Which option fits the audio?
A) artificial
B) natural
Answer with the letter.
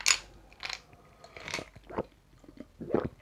B